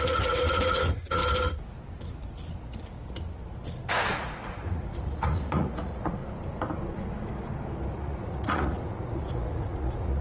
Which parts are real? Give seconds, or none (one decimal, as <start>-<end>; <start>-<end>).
1.2-3.9; 6.2-7.9